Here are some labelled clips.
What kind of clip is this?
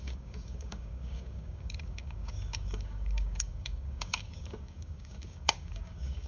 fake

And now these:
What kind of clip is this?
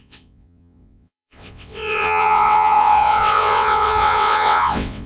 fake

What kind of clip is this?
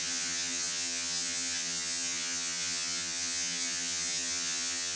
fake